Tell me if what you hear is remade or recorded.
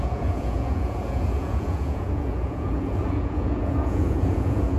remade